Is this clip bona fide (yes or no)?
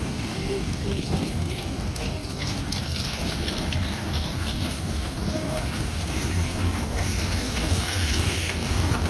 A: no